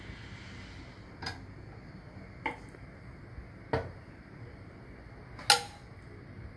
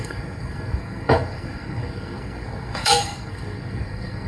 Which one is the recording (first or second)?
first